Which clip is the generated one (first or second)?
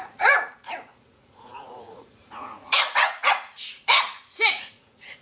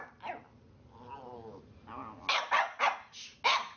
first